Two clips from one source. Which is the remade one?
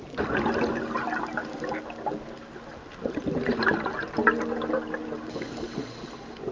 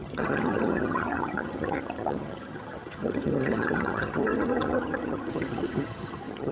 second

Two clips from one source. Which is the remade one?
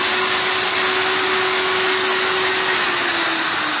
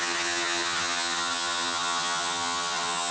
second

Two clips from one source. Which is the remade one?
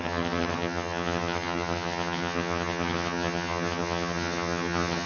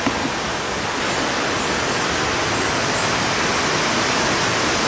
first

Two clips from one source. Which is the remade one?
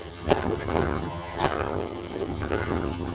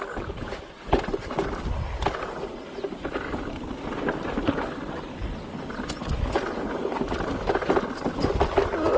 first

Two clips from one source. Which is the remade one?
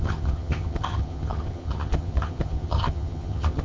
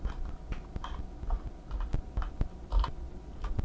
first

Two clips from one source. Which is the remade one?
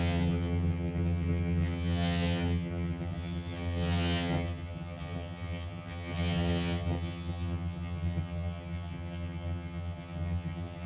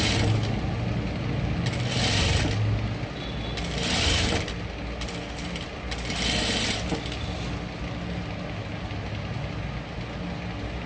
first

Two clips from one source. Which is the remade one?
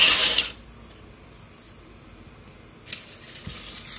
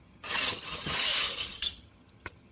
second